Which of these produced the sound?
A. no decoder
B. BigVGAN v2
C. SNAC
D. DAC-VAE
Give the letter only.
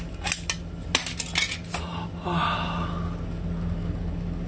A